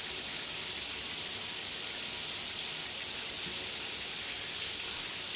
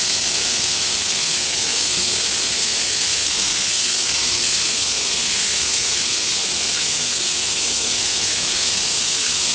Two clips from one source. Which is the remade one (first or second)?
second